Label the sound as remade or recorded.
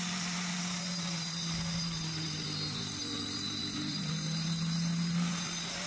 recorded